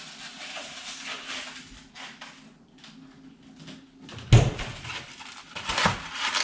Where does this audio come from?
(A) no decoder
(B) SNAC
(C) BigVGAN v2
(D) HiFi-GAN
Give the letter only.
A